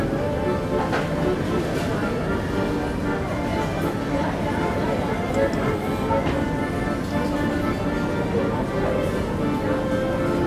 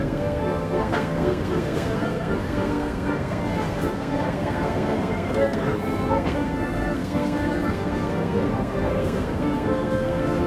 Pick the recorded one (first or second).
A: first